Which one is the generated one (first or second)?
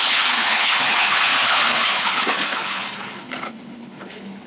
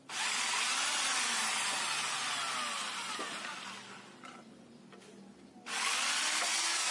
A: first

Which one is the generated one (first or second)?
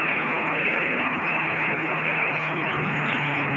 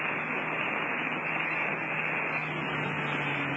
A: first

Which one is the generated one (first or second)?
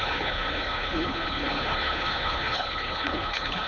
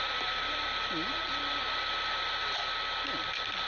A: first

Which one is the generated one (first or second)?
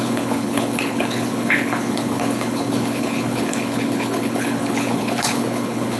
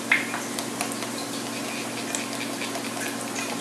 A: first